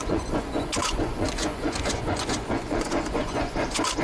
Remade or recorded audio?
remade